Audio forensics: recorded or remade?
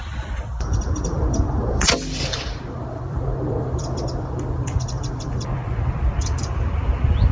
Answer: remade